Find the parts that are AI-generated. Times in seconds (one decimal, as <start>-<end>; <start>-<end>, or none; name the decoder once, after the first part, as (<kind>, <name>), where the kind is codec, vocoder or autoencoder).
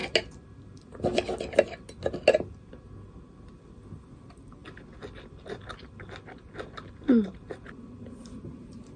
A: none